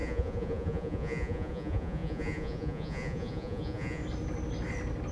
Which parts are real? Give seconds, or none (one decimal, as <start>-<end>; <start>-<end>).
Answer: 4.0-5.1